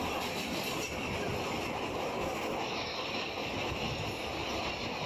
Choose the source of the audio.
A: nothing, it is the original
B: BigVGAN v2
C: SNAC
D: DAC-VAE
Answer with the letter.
A